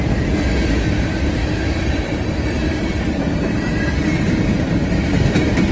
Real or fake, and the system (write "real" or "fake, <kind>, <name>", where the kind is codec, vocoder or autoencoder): real